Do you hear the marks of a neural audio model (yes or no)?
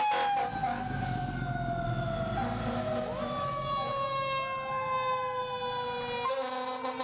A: no